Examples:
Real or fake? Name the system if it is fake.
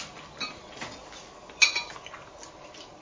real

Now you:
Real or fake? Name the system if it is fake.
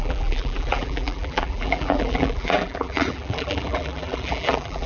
fake, vocoder, BigVGAN v2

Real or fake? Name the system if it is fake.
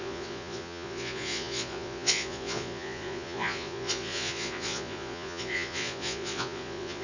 fake, vocoder, Vocos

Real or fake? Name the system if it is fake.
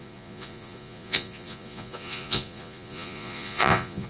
fake, vocoder, Vocos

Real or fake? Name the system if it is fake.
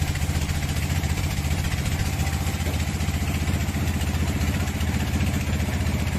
fake, vocoder, BigVGAN v2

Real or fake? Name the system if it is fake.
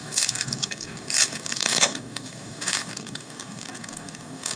fake, codec, DAC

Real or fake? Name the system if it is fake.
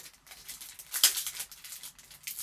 real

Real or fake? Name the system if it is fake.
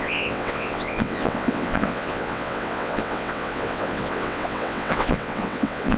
fake, vocoder, WaveNeXt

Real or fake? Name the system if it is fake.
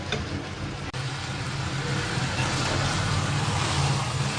real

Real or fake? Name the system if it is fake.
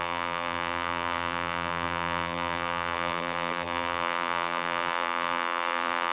fake, vocoder, BigVGAN v2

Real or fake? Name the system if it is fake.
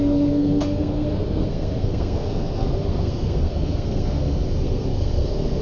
fake, codec, SNAC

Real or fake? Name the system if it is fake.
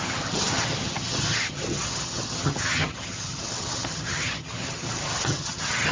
fake, vocoder, HiFi-GAN